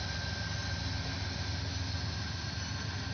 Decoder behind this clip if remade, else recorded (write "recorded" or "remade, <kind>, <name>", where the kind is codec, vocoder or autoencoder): recorded